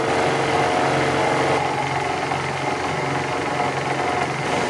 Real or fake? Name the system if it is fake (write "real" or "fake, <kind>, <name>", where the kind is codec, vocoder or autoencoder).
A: real